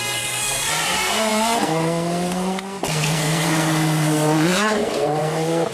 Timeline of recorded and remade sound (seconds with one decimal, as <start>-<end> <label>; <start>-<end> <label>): 0.0-5.7 remade